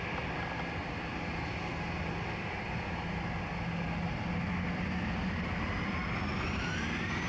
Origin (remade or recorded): recorded